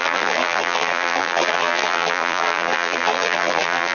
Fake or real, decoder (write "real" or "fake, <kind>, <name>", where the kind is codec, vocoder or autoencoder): fake, vocoder, BigVGAN v2